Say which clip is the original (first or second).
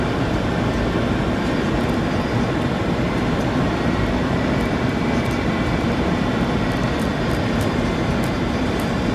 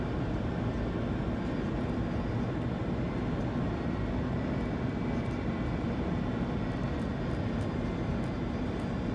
second